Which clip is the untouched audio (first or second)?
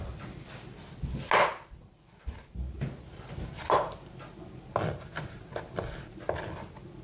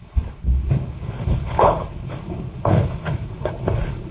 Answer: first